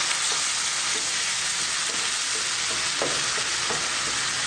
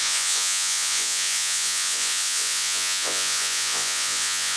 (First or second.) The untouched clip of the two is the first